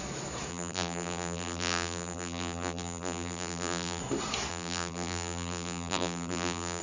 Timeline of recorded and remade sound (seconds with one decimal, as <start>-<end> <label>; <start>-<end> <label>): 0.0-0.5 recorded; 0.5-4.0 remade; 4.0-4.5 recorded; 4.5-6.8 remade